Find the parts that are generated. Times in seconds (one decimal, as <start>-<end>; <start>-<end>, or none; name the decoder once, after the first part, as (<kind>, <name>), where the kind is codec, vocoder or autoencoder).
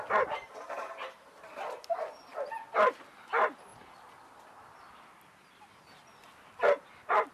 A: 0.0-2.3 (vocoder, BigVGAN v2); 3.1-3.7